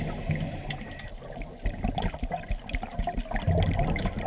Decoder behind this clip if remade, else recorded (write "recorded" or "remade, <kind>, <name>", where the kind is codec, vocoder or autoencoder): recorded